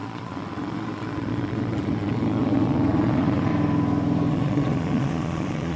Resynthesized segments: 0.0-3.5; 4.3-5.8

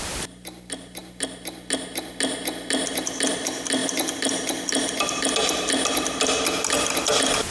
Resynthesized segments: none

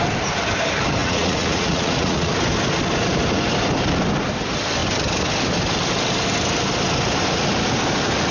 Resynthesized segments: 1.0-2.3

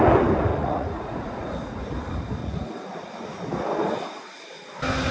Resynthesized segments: 0.5-1.8; 2.4-3.1